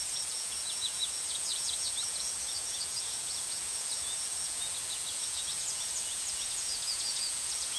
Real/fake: fake